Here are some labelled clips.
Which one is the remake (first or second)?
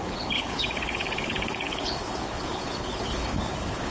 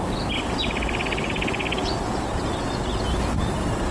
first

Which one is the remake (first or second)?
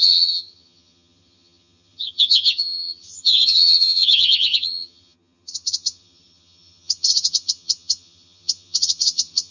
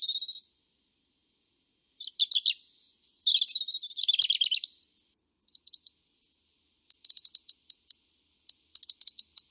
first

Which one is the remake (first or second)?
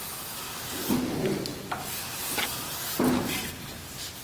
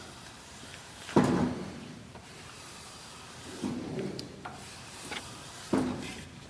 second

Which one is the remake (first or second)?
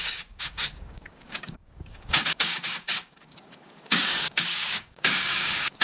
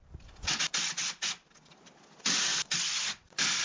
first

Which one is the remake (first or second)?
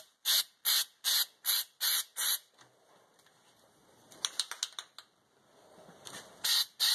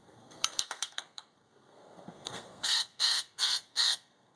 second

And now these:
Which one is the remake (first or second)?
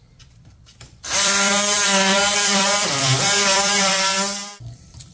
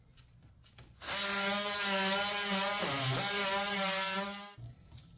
first